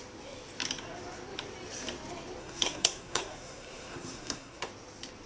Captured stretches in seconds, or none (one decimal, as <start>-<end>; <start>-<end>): 0.0-2.4; 4.7-5.3

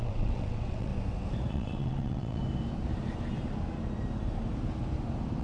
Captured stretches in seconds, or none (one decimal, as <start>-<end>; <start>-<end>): 0.9-1.5; 2.4-5.4

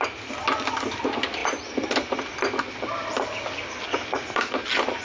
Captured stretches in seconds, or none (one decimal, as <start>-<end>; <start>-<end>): 0.0-5.0

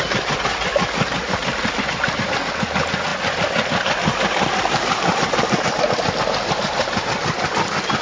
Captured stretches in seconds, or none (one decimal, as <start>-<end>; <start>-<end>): 0.0-1.4; 2.5-3.1; 5.8-8.0

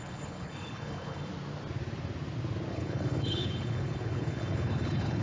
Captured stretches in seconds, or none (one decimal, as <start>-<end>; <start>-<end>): 1.3-2.7